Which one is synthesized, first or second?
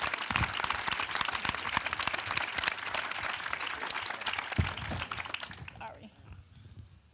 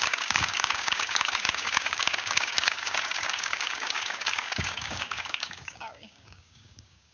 second